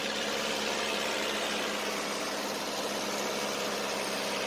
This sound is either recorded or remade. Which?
recorded